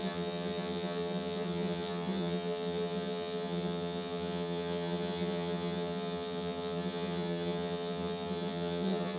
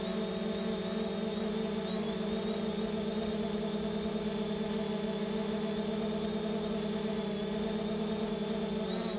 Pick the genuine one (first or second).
second